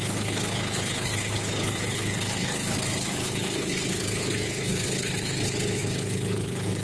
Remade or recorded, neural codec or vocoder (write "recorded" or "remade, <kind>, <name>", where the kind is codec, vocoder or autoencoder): remade, codec, HILCodec